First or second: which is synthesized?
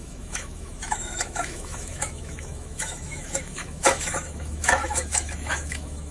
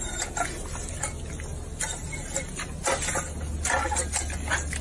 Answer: first